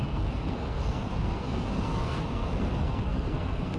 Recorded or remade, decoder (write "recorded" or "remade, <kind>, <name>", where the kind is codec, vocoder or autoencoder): remade, codec, SNAC